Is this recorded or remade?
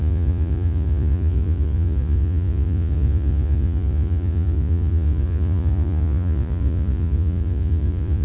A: remade